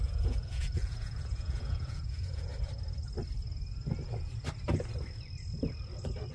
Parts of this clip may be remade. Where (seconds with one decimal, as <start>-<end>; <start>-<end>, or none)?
0.0-2.5

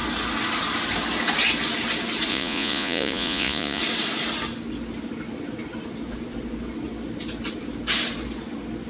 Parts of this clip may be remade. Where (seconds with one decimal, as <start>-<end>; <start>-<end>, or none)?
2.3-3.8

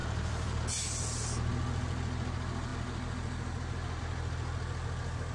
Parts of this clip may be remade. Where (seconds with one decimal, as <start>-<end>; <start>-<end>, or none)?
none

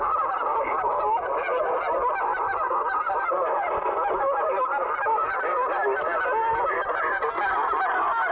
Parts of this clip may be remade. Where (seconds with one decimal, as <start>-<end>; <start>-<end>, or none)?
none

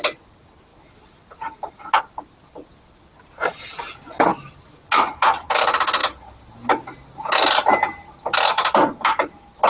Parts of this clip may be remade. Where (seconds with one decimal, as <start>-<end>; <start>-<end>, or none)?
none

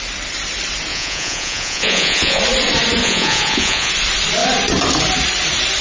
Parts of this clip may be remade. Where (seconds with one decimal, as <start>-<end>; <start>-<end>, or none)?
0.9-2.4; 3.0-3.9